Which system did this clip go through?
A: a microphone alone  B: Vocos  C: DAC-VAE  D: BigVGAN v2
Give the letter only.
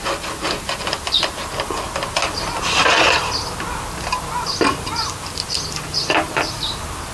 A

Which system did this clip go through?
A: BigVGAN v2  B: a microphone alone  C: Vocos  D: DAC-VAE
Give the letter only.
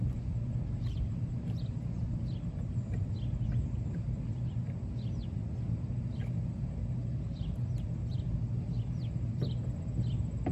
B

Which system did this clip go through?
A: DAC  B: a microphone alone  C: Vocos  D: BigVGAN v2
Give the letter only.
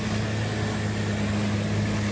B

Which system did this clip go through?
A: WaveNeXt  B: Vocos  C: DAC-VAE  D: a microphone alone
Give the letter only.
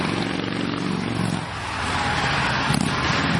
D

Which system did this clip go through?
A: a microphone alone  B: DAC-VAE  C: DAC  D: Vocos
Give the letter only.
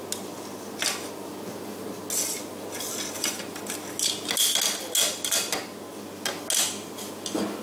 A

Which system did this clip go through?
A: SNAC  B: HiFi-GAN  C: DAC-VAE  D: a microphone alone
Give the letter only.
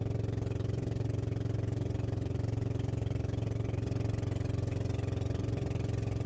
D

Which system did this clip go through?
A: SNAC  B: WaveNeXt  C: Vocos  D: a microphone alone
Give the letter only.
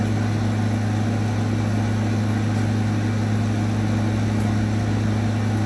D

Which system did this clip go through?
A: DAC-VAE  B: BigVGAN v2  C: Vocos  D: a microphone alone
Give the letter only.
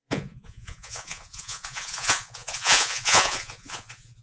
C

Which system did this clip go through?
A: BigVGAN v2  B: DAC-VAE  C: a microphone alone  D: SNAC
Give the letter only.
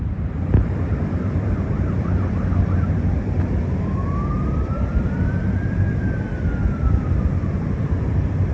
A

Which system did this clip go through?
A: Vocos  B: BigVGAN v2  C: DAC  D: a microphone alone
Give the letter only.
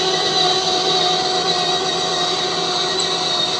D